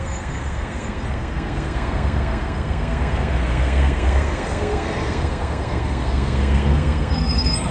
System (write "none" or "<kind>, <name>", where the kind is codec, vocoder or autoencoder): codec, SNAC